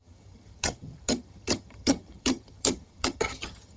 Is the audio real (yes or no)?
no